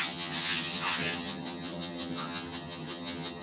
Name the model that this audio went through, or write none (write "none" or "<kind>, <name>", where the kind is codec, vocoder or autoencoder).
vocoder, HiFi-GAN